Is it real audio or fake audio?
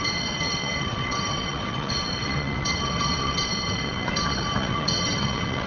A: fake